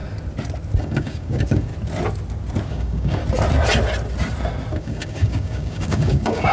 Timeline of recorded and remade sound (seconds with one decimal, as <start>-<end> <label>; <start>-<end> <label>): 0.0-0.8 recorded; 0.8-1.7 remade; 1.7-2.7 recorded; 2.7-3.2 remade; 3.2-4.7 recorded; 4.7-6.5 remade